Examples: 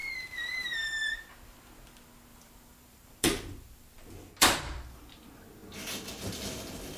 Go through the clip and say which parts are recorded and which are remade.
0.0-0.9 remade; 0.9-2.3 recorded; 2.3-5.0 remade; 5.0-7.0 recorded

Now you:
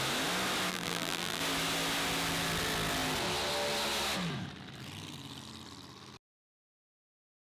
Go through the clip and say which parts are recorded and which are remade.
0.0-0.7 recorded; 0.7-1.4 remade; 1.4-7.5 recorded